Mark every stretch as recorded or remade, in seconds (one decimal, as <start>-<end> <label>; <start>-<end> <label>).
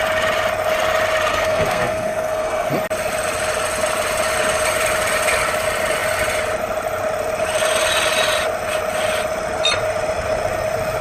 0.0-1.3 recorded; 1.3-2.7 remade; 2.7-11.0 recorded